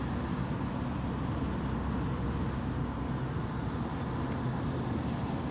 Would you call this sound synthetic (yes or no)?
no